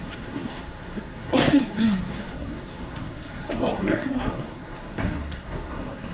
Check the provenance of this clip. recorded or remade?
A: remade